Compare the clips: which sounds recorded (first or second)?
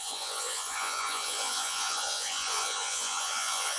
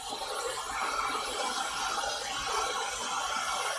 second